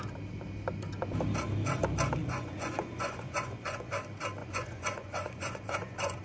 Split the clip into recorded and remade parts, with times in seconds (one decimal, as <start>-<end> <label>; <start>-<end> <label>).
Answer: 0.0-2.2 recorded; 2.2-3.9 remade; 3.9-4.4 recorded; 4.4-6.2 remade